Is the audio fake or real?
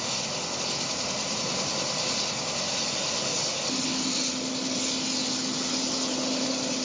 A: real